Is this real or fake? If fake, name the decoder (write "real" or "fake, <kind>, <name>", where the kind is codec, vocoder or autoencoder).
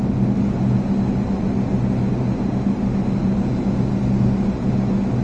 real